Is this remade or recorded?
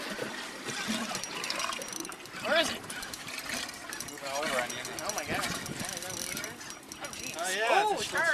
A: recorded